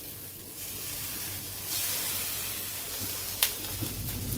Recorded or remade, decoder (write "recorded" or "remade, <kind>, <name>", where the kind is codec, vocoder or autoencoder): remade, vocoder, BigVGAN v2